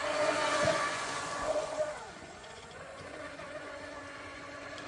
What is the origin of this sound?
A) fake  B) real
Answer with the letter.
A